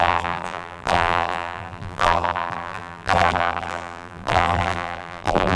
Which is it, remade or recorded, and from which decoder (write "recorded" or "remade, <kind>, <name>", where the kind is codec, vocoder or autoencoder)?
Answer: remade, vocoder, BigVGAN v2